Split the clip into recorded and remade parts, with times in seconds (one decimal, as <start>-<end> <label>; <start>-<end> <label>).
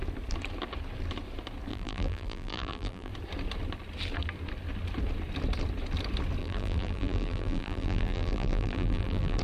0.0-1.7 recorded; 1.7-3.1 remade; 3.1-6.4 recorded; 6.4-9.4 remade